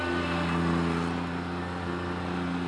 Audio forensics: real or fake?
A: real